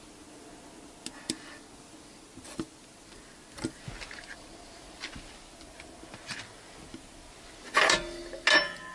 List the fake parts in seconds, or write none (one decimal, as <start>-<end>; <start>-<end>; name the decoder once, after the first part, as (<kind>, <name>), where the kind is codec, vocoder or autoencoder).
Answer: none